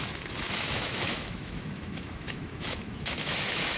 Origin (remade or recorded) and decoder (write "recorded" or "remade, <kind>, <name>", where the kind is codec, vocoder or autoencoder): remade, autoencoder, DAC-VAE